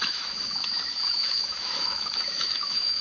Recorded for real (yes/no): no